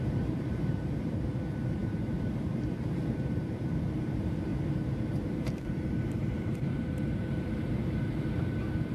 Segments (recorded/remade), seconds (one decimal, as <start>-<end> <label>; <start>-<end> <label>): 0.0-4.5 remade; 4.5-5.2 recorded; 5.2-8.9 remade